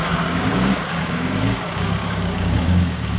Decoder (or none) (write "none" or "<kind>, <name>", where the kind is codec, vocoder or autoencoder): codec, DAC